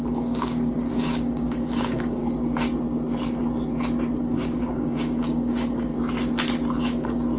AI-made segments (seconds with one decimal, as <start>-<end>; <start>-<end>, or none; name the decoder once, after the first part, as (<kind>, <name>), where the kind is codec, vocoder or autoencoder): 0.0-2.2 (codec, DAC); 4.2-5.9; 6.8-7.4